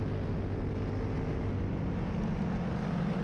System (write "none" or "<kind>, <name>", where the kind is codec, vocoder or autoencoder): none